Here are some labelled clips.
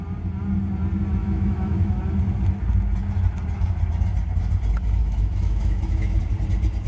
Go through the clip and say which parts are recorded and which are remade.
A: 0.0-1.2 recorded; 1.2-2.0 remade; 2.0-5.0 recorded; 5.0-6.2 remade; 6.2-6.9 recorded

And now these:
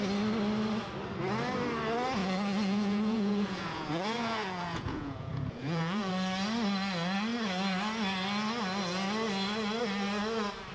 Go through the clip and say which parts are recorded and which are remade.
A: 0.0-2.2 recorded; 2.2-6.1 remade; 6.1-10.7 recorded

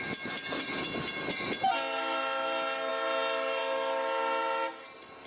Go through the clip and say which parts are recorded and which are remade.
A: 0.0-5.3 recorded

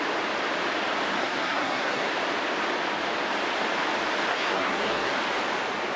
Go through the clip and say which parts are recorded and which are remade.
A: 0.0-1.2 recorded; 1.2-2.1 remade; 2.1-4.3 recorded; 4.3-5.1 remade; 5.1-6.0 recorded

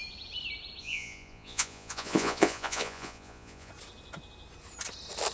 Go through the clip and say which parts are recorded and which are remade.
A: 0.0-0.8 recorded; 0.8-3.7 remade; 3.7-5.3 recorded

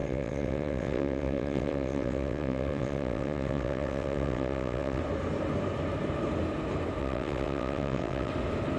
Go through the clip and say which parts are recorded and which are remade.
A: 0.0-5.0 remade; 5.0-7.0 recorded; 7.0-8.3 remade; 8.3-8.8 recorded

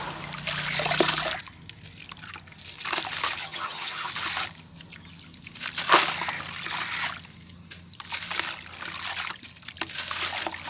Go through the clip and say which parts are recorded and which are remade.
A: 0.0-3.4 recorded; 3.4-4.1 remade; 4.1-10.7 recorded